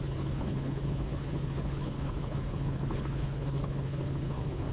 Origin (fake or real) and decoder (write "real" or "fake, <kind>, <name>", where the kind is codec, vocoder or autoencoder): fake, codec, HILCodec